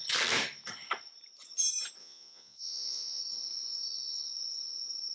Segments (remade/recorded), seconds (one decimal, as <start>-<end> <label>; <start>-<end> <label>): 0.0-2.0 recorded; 2.0-3.2 remade; 3.2-5.1 recorded